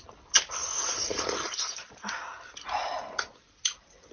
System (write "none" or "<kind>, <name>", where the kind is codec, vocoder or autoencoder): none